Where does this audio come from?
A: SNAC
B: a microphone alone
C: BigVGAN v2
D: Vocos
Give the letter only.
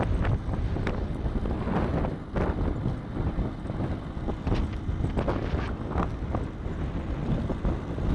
B